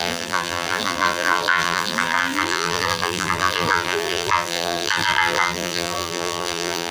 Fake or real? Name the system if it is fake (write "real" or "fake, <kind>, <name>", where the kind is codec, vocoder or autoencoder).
fake, vocoder, BigVGAN v2